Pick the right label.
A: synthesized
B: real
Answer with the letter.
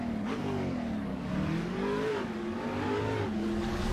A